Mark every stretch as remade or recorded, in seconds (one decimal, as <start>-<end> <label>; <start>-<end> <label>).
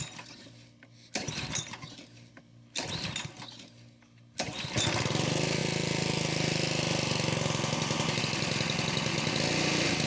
0.0-10.1 recorded